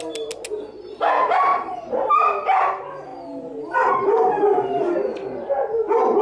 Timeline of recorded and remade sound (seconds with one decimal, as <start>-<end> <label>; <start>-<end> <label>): 0.0-1.5 recorded; 1.5-2.1 remade; 2.1-3.1 recorded; 3.1-4.8 remade; 4.8-6.2 recorded

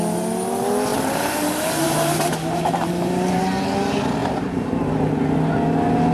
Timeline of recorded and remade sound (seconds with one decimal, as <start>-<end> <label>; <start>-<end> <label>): 0.0-0.9 recorded; 0.9-3.4 remade; 3.4-4.2 recorded; 4.2-5.1 remade; 5.1-6.1 recorded

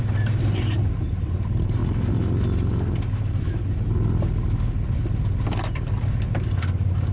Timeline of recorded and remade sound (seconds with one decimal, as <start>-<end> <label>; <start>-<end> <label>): 0.0-1.8 remade; 1.8-6.1 recorded; 6.1-7.1 remade

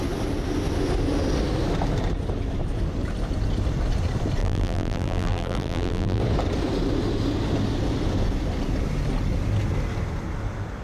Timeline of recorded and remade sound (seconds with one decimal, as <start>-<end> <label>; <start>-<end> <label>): 0.0-4.4 recorded; 4.4-6.2 remade; 6.2-10.8 recorded